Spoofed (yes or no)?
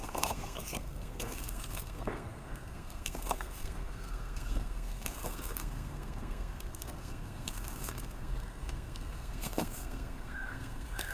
yes